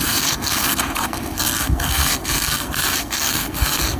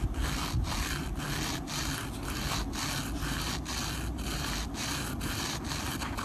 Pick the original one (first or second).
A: second